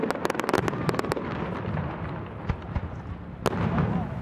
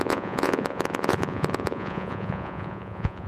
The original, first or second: first